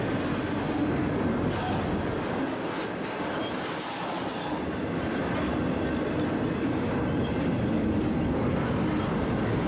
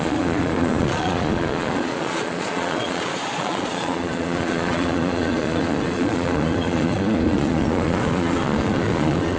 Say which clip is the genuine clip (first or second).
first